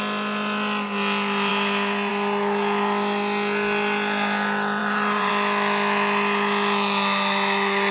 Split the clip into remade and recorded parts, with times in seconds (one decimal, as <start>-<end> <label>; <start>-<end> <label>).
0.0-4.8 recorded; 4.8-5.3 remade; 5.3-7.9 recorded